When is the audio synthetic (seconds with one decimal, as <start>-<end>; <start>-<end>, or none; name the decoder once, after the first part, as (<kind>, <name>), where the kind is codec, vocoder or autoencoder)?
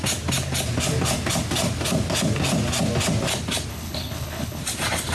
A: 3.7-4.6 (codec, HILCodec)